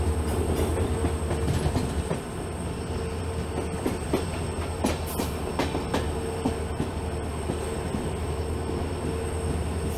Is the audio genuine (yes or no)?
yes